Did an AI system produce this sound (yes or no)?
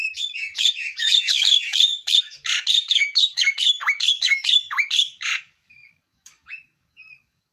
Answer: yes